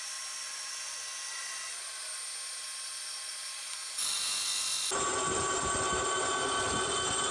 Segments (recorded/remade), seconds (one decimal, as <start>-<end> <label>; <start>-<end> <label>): 0.0-7.3 recorded